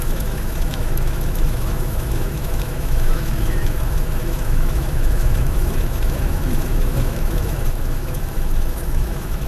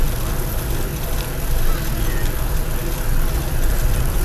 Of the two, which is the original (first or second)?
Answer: second